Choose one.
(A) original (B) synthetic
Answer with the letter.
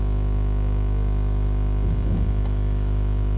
B